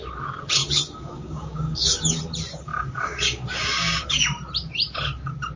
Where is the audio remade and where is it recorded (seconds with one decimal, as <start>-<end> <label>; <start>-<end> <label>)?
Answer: 0.0-0.6 recorded; 0.6-2.2 remade; 2.2-2.7 recorded; 2.7-4.2 remade; 4.2-5.6 recorded